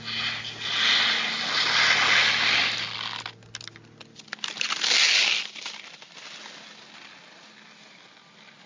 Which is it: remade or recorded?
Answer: recorded